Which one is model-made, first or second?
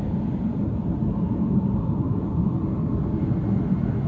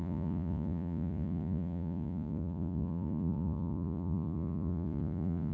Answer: second